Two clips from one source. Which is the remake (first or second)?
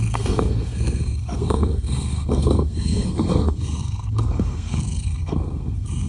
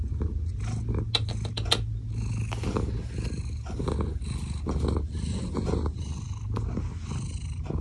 first